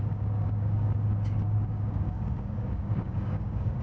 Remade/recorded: remade